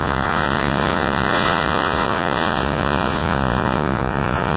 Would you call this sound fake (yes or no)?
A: yes